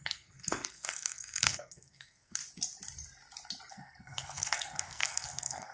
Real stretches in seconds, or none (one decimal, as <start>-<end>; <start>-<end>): 2.4-3.7